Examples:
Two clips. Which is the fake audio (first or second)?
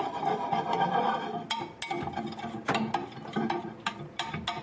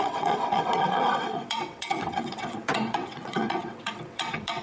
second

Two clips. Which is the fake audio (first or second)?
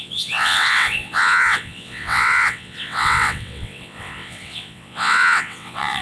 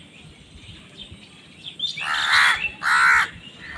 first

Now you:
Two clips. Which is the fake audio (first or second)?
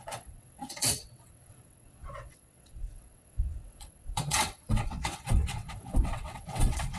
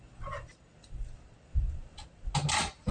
first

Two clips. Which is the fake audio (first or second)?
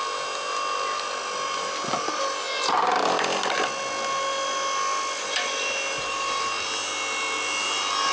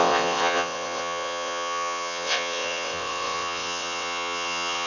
second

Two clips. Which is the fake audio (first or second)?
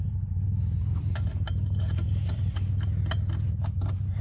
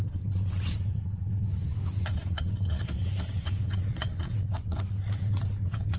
second